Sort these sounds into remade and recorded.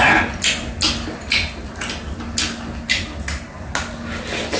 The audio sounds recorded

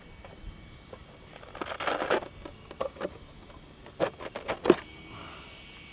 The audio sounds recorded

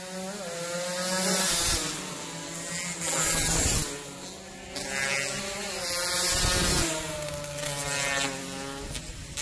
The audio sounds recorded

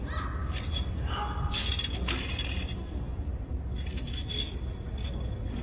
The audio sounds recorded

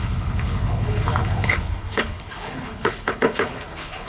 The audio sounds remade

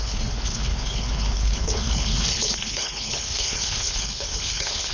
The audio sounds remade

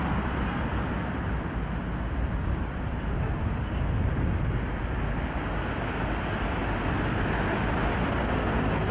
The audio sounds recorded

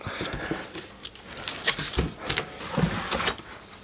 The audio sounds recorded